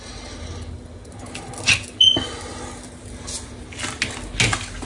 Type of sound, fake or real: real